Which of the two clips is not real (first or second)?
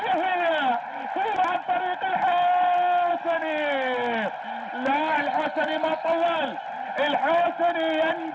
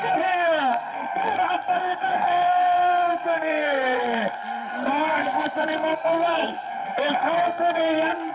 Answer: second